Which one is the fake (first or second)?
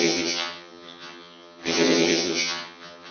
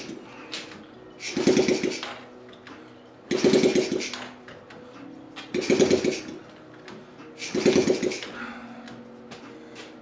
first